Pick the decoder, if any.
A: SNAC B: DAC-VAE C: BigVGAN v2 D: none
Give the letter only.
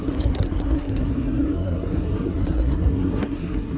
A